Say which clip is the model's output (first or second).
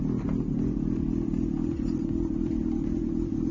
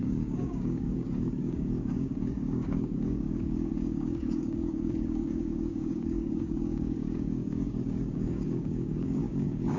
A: second